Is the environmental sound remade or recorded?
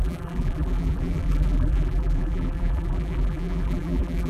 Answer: remade